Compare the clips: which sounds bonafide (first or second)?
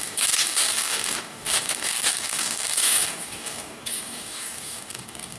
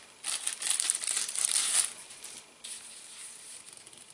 second